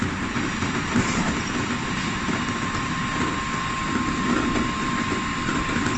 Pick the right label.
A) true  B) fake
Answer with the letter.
A